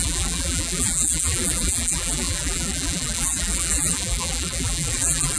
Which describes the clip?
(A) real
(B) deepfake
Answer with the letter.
B